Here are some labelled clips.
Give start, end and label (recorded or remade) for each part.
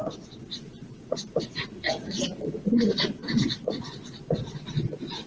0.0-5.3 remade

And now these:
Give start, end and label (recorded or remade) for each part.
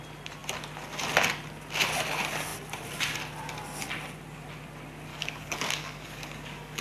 0.0-5.1 recorded; 5.1-6.8 remade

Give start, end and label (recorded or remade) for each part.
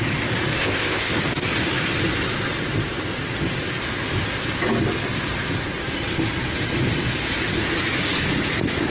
0.0-0.6 recorded; 0.6-1.1 remade; 1.1-8.9 recorded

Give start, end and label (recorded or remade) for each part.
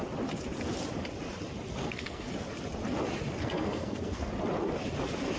0.0-1.8 recorded; 1.8-2.3 remade; 2.3-3.4 recorded; 3.4-4.3 remade; 4.3-5.4 recorded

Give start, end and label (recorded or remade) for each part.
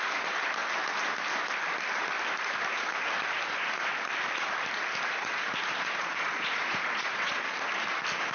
0.0-5.7 recorded; 5.7-7.4 remade; 7.4-8.3 recorded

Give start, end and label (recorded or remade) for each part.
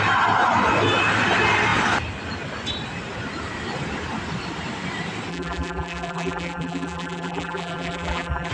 0.0-5.3 recorded; 5.3-8.5 remade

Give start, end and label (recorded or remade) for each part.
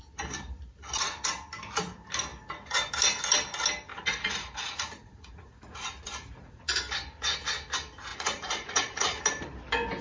0.0-3.9 recorded; 3.9-6.6 remade; 6.6-8.1 recorded; 8.1-9.2 remade; 9.2-10.0 recorded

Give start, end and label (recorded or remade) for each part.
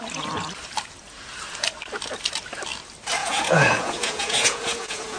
0.0-3.2 recorded; 3.2-5.2 remade